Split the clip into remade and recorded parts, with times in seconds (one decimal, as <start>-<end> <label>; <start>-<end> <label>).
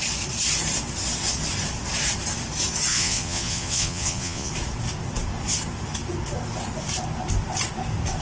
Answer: 0.0-2.9 recorded; 2.9-4.5 remade; 4.5-8.2 recorded